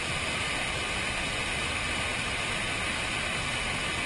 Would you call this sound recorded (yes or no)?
yes